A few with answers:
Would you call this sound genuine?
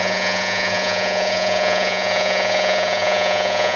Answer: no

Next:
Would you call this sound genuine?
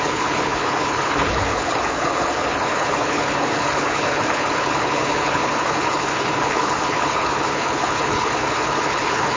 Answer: no